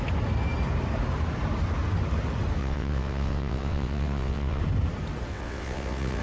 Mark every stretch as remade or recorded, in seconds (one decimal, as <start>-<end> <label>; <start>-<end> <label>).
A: 0.0-2.6 recorded; 2.6-4.6 remade; 4.6-5.3 recorded; 5.3-6.2 remade